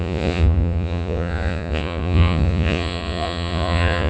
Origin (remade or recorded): remade